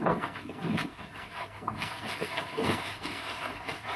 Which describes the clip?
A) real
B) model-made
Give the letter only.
B